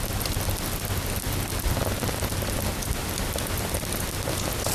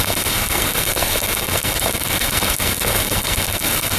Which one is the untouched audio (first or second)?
first